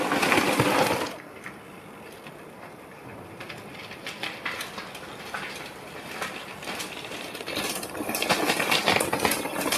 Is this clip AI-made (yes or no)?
no